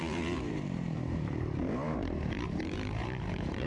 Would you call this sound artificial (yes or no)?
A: yes